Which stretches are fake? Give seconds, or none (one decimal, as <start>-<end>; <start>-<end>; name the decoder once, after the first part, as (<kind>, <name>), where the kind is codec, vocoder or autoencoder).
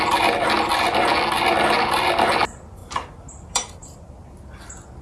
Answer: 2.8-4.1 (vocoder, BigVGAN v2)